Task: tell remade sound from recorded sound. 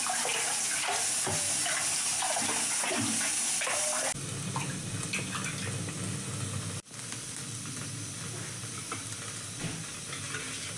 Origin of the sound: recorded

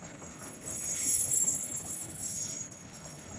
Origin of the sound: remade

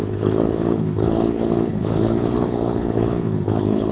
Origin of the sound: remade